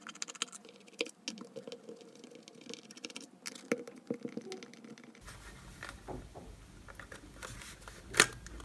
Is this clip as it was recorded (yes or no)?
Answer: yes